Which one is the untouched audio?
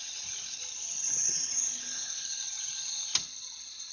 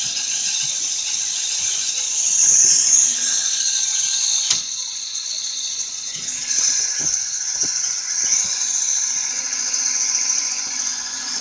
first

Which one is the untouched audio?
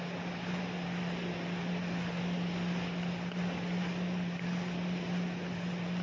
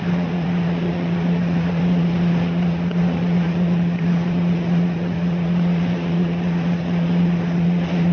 first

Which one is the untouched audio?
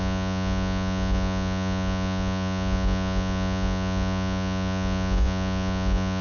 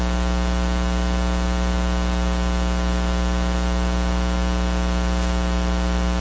second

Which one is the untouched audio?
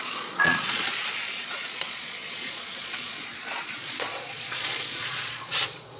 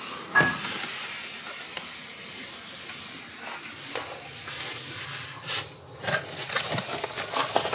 second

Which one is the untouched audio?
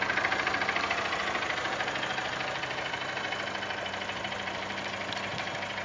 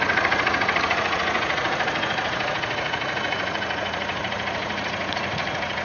first